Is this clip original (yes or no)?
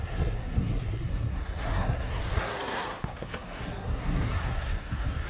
no